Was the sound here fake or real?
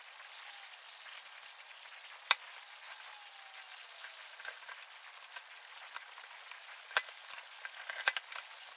real